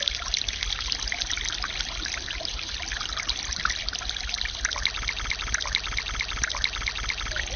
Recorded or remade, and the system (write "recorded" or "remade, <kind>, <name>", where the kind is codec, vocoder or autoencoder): recorded